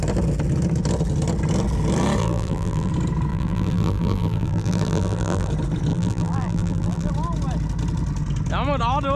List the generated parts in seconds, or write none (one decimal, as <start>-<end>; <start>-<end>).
2.2-2.9; 3.3-5.5; 5.9-7.1